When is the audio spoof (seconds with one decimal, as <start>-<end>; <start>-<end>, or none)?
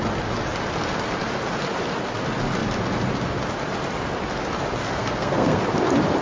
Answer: 4.8-5.6